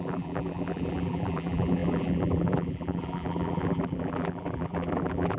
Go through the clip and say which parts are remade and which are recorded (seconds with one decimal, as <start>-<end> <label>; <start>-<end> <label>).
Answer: 0.0-5.4 remade